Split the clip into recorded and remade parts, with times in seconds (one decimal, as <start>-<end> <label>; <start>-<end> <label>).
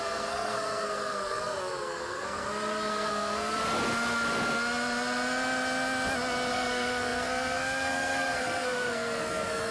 0.0-3.6 remade; 3.6-6.5 recorded; 6.5-9.7 remade